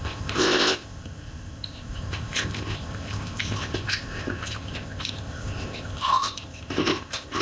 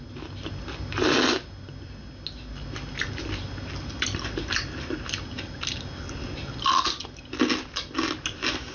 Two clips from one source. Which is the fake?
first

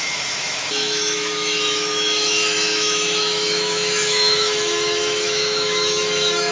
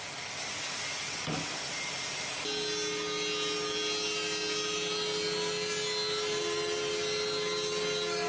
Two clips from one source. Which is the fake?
first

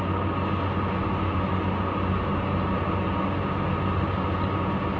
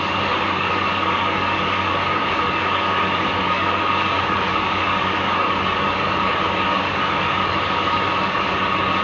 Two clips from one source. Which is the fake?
second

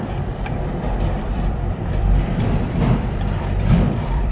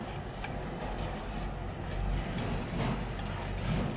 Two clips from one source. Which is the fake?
first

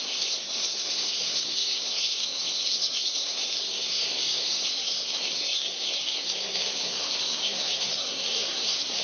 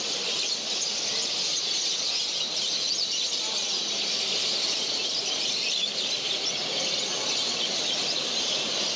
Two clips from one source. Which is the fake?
first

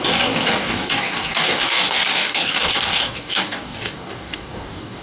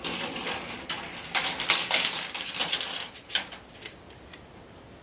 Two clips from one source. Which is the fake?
first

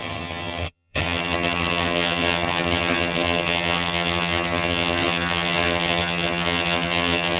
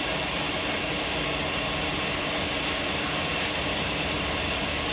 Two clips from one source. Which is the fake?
first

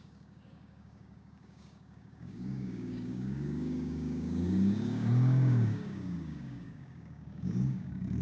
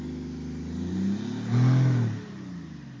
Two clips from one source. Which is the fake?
first